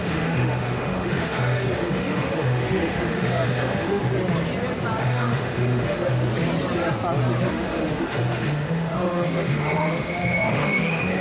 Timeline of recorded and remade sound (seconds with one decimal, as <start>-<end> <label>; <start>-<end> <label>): 0.0-4.0 remade; 4.0-5.0 recorded; 5.0-6.3 remade; 6.3-7.5 recorded; 7.5-11.2 remade